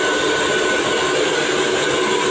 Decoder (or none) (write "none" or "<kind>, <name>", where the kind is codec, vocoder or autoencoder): none